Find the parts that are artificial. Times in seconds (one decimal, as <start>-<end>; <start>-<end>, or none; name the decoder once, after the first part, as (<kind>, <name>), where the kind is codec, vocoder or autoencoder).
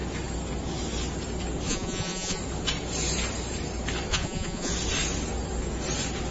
1.7-2.4 (vocoder, Vocos); 4.1-4.7